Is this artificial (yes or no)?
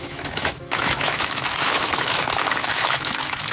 yes